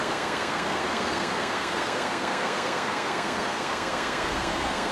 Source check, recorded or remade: remade